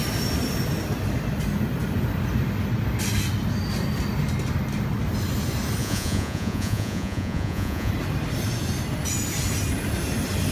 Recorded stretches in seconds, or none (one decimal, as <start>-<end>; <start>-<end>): 0.0-5.8; 7.9-10.5